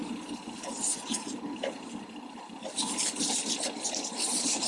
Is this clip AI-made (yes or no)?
no